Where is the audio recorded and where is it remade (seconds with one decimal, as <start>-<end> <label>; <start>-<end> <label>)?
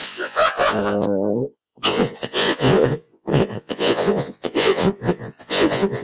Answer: 0.0-6.0 remade